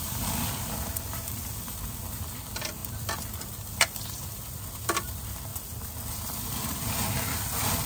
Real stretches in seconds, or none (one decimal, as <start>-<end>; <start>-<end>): 1.4-2.0; 5.5-6.1